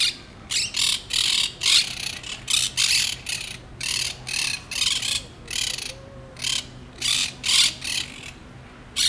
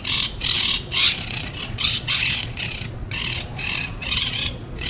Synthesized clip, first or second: second